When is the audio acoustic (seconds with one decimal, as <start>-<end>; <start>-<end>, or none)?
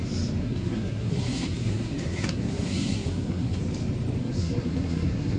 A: 0.0-0.4; 3.6-4.2